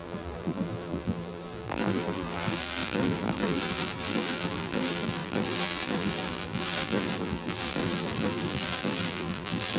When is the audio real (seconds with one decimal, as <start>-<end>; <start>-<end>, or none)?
none